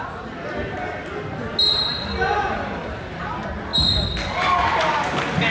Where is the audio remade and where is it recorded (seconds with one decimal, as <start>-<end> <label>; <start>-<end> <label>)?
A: 0.0-5.5 recorded